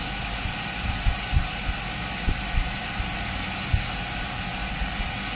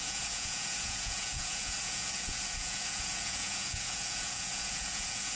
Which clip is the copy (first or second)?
second